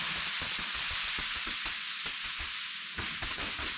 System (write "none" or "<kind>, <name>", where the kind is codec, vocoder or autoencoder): none